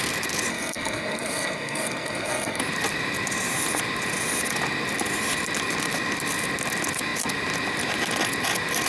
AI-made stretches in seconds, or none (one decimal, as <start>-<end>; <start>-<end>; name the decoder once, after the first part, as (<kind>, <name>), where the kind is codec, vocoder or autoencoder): 0.5-2.6 (codec, SNAC)

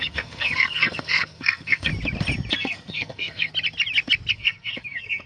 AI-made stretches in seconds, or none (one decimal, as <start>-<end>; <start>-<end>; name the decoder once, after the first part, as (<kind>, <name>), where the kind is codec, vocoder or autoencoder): 0.0-1.9 (codec, SNAC); 2.5-3.5; 4.3-5.3

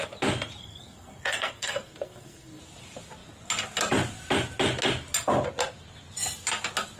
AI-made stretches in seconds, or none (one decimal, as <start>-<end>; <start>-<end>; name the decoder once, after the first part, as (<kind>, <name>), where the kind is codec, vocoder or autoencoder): 0.6-2.6 (codec, SNAC)

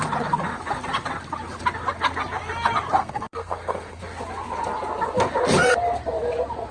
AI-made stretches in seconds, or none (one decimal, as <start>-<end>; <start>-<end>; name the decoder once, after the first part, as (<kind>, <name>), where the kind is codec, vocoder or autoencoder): 3.0-4.0 (codec, SNAC)

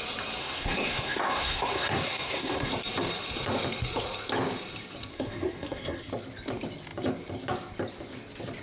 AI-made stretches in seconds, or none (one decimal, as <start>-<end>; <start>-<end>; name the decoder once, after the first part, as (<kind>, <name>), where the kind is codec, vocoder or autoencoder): 0.4-2.7 (codec, SNAC); 5.1-6.1

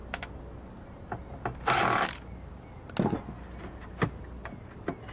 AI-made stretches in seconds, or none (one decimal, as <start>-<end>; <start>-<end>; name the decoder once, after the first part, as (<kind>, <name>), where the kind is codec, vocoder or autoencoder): none

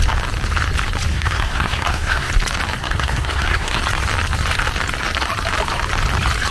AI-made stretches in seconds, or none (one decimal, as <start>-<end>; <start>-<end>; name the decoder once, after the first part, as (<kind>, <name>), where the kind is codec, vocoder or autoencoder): 1.1-2.3 (codec, SNAC); 2.8-3.8